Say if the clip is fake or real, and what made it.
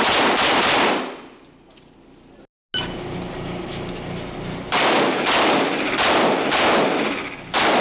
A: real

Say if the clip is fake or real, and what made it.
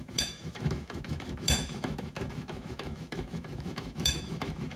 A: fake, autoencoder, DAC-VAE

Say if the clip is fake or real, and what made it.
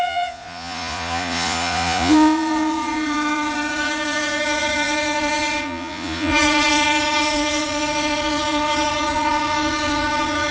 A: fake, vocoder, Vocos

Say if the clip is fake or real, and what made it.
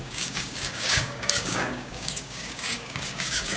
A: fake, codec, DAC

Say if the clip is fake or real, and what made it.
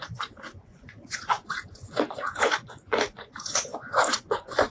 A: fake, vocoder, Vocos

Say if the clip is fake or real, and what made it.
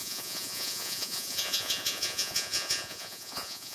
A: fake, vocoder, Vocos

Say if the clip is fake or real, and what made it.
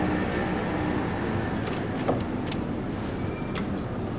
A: real